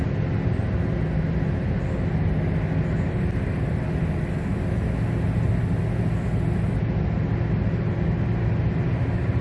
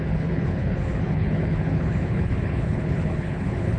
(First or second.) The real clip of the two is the first